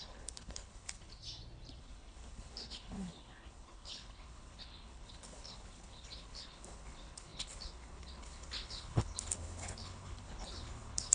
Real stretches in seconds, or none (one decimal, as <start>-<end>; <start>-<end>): 1.2-1.8